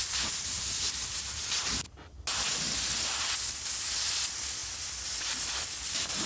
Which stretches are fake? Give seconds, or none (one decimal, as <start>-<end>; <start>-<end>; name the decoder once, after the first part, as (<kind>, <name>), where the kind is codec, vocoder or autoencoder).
0.0-1.4 (vocoder, BigVGAN v2)